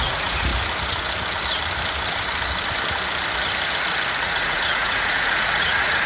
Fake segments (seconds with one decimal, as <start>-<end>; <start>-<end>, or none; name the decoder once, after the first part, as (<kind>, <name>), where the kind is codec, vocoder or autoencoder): 0.0-0.5 (vocoder, Vocos); 4.2-6.1